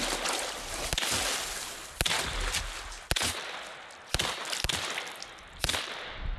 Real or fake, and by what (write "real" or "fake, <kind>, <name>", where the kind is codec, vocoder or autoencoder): real